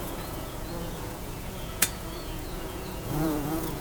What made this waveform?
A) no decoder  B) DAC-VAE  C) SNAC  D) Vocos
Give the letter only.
D